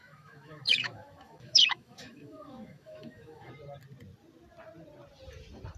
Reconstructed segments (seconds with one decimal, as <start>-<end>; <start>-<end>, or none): 0.0-3.5